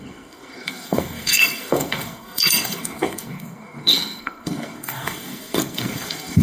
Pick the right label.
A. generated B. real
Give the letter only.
A